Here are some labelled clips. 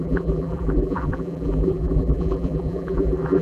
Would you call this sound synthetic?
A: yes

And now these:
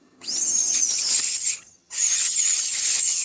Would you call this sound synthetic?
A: yes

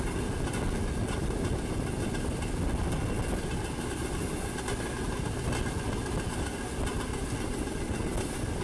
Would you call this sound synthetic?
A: no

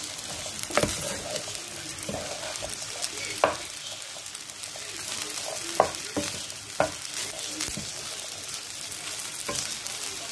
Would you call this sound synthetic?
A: no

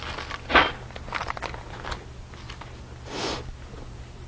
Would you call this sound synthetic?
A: no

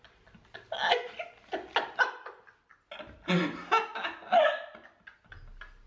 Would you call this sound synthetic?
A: no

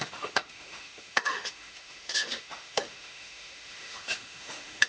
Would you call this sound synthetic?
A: yes